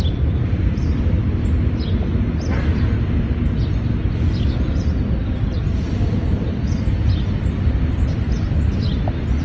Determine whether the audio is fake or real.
real